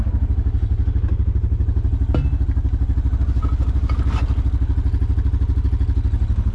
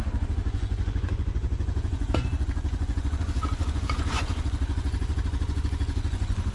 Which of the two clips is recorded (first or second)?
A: first